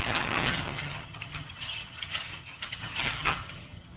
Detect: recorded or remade remade